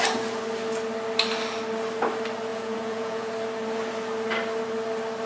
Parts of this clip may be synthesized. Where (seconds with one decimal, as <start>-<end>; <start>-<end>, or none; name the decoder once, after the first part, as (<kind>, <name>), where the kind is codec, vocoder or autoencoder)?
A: 2.5-3.3 (vocoder, Vocos)